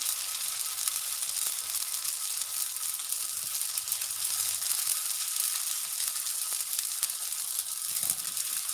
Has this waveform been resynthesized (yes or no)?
no